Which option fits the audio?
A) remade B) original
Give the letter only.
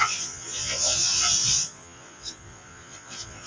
A